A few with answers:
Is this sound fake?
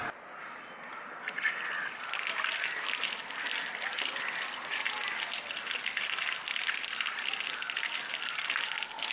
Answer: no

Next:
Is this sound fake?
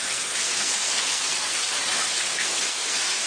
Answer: yes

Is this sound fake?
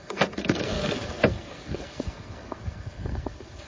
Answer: yes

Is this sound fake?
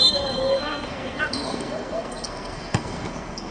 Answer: yes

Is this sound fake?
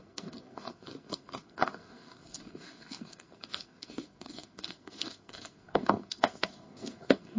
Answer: yes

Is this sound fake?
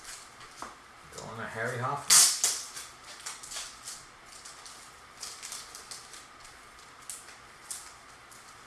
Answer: no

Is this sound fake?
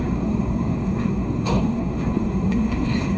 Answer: yes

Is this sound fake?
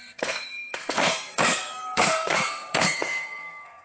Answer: yes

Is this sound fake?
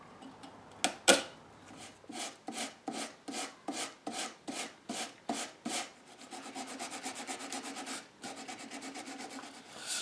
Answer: no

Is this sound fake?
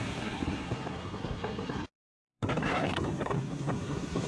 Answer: yes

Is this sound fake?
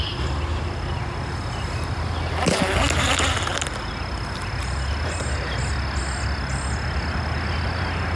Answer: no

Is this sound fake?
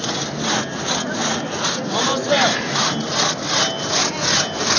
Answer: no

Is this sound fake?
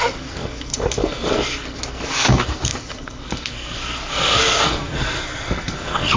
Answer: yes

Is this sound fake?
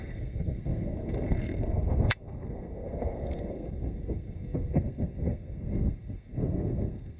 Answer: yes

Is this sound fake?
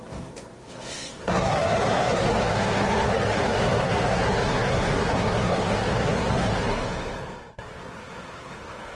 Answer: yes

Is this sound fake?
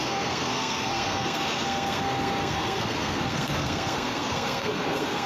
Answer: yes